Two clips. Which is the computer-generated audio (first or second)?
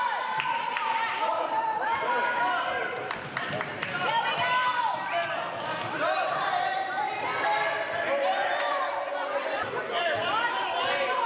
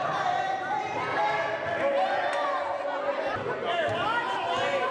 first